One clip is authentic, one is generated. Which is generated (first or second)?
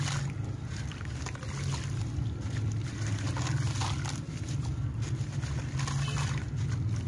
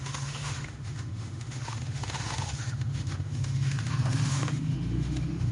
second